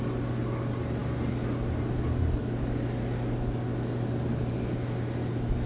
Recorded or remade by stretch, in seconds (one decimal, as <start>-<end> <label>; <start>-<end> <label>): 0.0-5.7 recorded